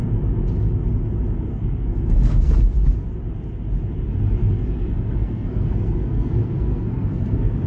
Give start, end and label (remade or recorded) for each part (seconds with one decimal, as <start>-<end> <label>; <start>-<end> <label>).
0.0-1.5 recorded; 1.5-2.5 remade; 2.5-4.4 recorded; 4.4-7.7 remade